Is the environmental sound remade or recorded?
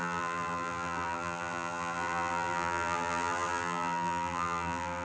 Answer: remade